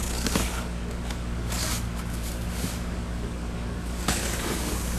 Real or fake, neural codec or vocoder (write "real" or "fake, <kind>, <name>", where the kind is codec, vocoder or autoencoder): fake, codec, DAC